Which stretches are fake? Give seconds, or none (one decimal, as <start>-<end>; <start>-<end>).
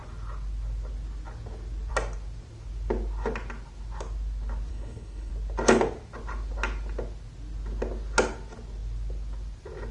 4.7-5.3